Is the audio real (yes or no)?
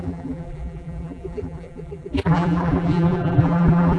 no